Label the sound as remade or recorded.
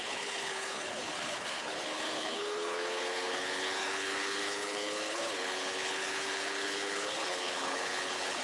remade